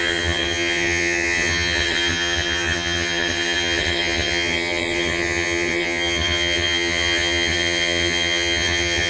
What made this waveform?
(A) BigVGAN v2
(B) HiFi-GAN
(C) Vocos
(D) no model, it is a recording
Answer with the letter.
B